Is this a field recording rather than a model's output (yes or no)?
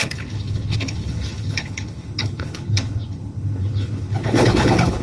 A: no